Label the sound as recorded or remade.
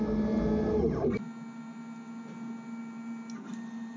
recorded